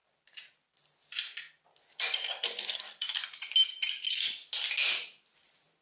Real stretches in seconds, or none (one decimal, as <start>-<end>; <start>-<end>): 0.0-5.8